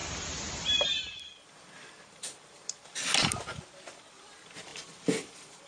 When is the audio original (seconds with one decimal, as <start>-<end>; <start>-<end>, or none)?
0.0-0.6; 3.3-3.9